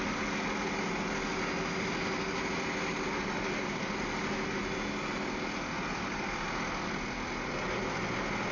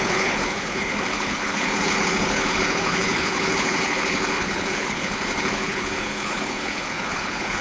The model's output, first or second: second